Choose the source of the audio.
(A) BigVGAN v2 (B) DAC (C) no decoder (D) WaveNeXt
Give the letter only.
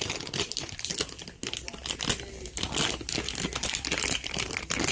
C